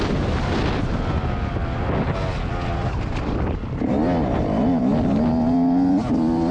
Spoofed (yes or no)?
no